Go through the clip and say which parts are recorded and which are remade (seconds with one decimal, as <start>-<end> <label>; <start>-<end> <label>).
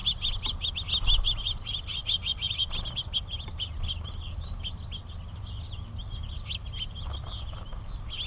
0.0-2.0 recorded; 2.0-3.7 remade; 3.7-8.3 recorded